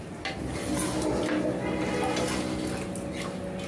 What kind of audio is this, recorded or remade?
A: recorded